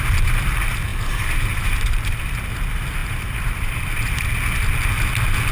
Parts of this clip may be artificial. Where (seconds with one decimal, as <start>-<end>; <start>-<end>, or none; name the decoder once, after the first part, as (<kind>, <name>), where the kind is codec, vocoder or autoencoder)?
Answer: 0.9-2.2 (vocoder, BigVGAN v2); 3.0-3.8